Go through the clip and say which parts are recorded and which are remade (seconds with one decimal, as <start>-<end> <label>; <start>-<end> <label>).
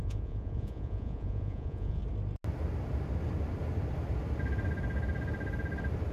0.0-2.0 remade; 2.0-6.1 recorded